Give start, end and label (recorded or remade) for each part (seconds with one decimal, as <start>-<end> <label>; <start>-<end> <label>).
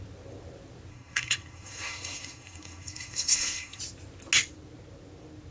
0.0-0.9 recorded; 0.9-3.8 remade; 3.8-5.5 recorded